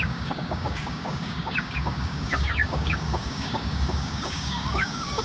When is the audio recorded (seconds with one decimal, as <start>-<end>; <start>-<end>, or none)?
none